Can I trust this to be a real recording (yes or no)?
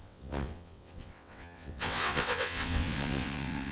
no